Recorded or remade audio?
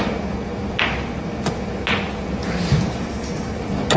recorded